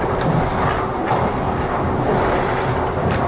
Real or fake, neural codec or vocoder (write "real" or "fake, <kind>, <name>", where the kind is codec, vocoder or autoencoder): real